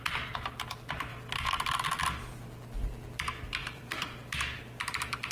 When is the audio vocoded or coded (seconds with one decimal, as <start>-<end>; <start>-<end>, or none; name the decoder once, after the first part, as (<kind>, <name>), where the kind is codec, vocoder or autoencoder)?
1.1-2.3 (vocoder, BigVGAN v2); 3.6-4.6